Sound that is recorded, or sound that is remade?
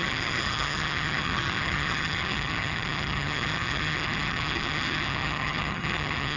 remade